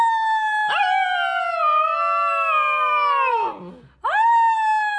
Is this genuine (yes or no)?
yes